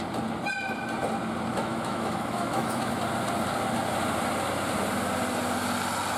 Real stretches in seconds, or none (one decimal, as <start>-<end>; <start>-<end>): 0.0-1.5; 2.9-6.2